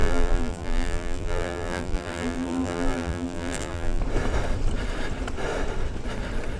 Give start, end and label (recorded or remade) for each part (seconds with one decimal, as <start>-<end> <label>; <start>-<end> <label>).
0.0-4.0 remade; 4.0-6.6 recorded